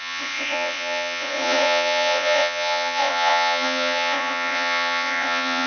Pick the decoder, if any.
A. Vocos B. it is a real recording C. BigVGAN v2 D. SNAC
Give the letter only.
A